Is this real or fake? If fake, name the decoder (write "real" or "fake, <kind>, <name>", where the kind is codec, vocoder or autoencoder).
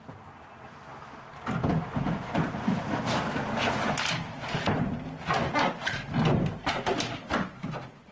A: real